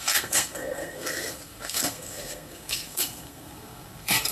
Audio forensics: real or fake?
fake